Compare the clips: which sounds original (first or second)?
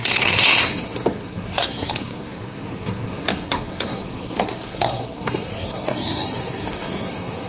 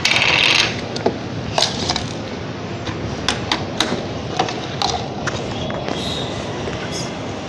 second